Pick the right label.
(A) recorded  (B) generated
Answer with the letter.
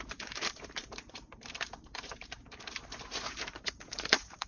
B